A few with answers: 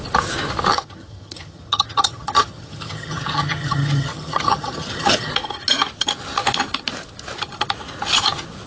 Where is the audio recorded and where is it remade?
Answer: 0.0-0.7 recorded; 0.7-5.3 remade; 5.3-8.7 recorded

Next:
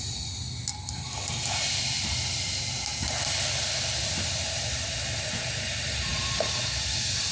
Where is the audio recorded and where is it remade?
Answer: 0.0-7.3 recorded

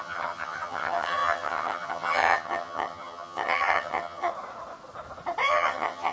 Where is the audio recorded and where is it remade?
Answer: 0.0-4.3 remade; 4.3-5.5 recorded; 5.5-6.1 remade

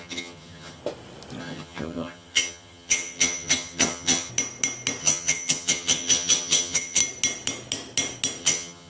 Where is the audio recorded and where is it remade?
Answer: 0.0-0.8 remade; 0.8-1.4 recorded; 1.4-4.3 remade; 4.3-5.0 recorded; 5.0-7.0 remade; 7.0-8.4 recorded; 8.4-8.9 remade

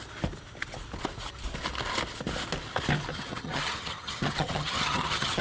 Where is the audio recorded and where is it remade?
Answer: 0.0-3.1 recorded; 3.1-5.4 remade

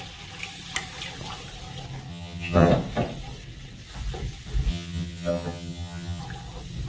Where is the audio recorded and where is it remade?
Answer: 0.0-2.1 recorded; 2.1-2.7 remade; 2.7-4.7 recorded; 4.7-6.2 remade; 6.2-6.9 recorded

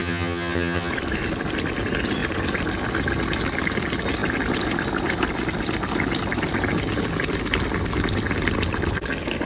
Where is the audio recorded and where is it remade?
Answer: 0.0-0.9 remade; 0.9-9.4 recorded

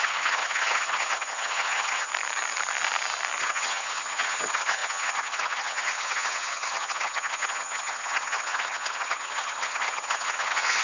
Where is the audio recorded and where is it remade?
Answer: 0.0-2.1 remade; 2.1-3.4 recorded; 3.4-10.8 remade